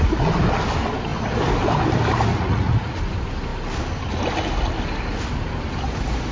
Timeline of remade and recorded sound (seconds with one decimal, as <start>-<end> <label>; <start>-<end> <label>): 0.0-2.3 recorded; 2.3-3.0 remade; 3.0-6.3 recorded